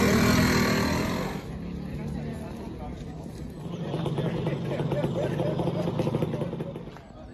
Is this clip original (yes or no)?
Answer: yes